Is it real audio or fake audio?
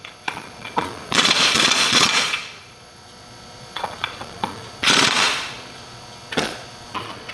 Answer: fake